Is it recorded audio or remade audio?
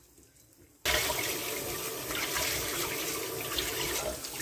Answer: recorded